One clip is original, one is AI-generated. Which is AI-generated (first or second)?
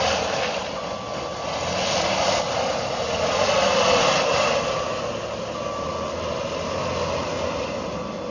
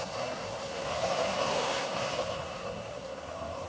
second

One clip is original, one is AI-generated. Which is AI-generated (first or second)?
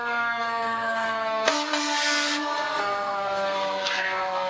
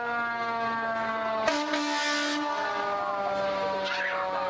first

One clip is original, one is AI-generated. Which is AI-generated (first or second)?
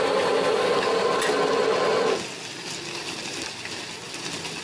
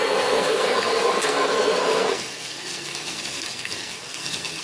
second